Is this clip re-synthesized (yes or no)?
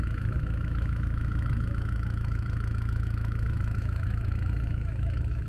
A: yes